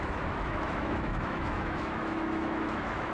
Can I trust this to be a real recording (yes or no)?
no